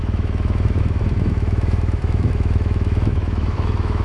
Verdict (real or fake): fake